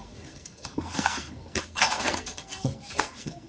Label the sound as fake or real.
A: fake